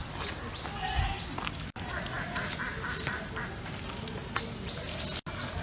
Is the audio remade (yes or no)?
no